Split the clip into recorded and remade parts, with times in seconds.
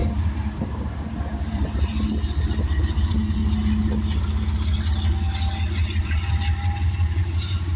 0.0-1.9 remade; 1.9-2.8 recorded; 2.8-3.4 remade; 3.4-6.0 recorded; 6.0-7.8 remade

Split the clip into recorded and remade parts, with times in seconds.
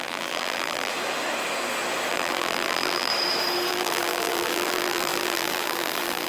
0.0-0.9 remade; 0.9-2.1 recorded; 2.1-3.1 remade; 3.1-3.7 recorded; 3.7-6.3 remade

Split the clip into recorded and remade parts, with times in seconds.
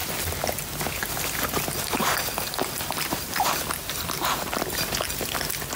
0.0-2.0 recorded; 2.0-5.8 remade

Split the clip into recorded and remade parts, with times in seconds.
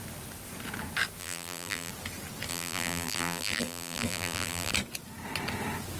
0.0-1.2 recorded; 1.2-1.9 remade; 1.9-2.5 recorded; 2.5-4.7 remade; 4.7-6.0 recorded